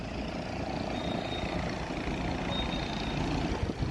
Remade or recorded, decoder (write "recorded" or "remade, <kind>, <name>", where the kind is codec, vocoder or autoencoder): recorded